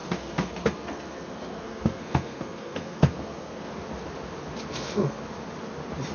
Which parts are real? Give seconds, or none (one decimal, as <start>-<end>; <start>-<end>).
3.7-4.7; 5.2-6.1

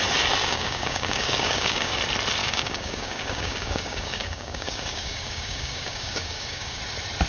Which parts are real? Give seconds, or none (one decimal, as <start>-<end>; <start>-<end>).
0.0-0.4; 2.0-2.4; 6.8-7.3

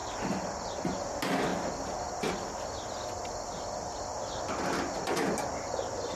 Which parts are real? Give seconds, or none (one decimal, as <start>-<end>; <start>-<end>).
0.0-6.2